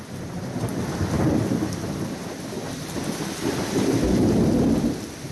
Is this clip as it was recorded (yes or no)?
yes